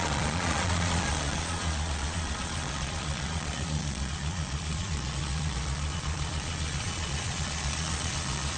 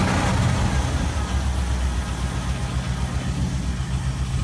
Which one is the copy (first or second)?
first